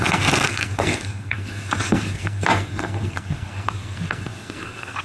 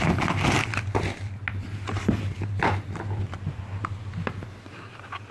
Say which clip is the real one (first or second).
second